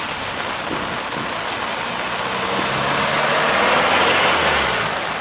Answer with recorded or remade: recorded